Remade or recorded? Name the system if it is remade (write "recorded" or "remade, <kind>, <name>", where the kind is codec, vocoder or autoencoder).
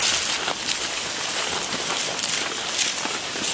recorded